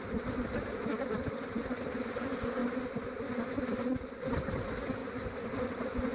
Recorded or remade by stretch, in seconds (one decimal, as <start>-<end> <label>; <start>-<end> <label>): 0.0-6.1 recorded